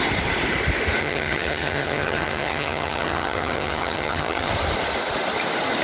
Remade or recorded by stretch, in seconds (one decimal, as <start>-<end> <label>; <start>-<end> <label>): 0.0-1.0 recorded; 1.0-4.5 remade; 4.5-5.8 recorded